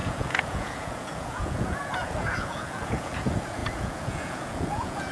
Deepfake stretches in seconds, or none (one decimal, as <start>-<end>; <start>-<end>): 0.0-5.1